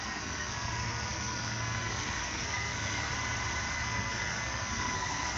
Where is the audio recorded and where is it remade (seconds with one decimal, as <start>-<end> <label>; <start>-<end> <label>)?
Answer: 0.0-3.1 remade; 3.1-3.7 recorded; 3.7-5.4 remade

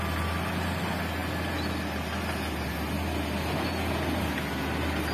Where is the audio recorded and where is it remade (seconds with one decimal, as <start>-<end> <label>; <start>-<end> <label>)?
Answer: 0.0-5.1 recorded

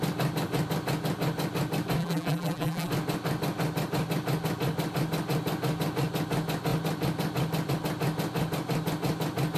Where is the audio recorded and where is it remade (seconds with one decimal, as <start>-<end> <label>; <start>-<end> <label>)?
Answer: 0.0-2.0 recorded; 2.0-2.9 remade; 2.9-9.6 recorded

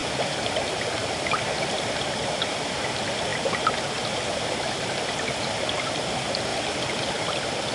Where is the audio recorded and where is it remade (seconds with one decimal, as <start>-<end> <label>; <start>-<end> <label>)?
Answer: 0.0-1.9 recorded; 1.9-3.3 remade; 3.3-5.9 recorded; 5.9-6.5 remade; 6.5-7.1 recorded; 7.1-7.7 remade

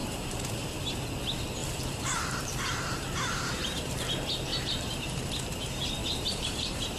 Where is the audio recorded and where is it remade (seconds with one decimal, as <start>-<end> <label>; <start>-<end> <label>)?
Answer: 0.0-0.7 remade; 0.7-1.6 recorded; 1.6-3.9 remade; 3.9-4.5 recorded; 4.5-5.3 remade; 5.3-6.0 recorded; 6.0-7.0 remade

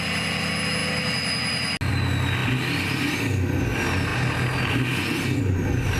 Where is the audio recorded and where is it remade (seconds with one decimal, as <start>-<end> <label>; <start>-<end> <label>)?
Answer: 0.0-6.0 recorded

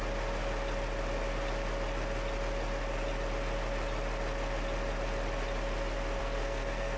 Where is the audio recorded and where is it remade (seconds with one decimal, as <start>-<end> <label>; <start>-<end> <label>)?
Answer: 0.0-6.2 recorded; 6.2-7.0 remade